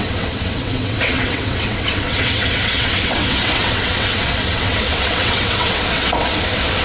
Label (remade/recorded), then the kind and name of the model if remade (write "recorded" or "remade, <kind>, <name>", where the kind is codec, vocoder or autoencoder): remade, vocoder, WaveNeXt